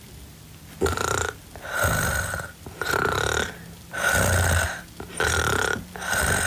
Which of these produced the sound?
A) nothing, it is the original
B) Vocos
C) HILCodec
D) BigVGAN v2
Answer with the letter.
A